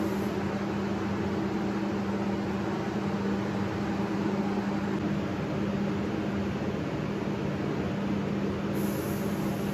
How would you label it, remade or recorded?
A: recorded